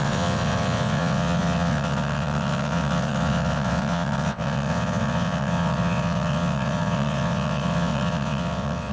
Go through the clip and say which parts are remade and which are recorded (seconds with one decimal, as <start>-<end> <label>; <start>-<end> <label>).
0.0-8.9 remade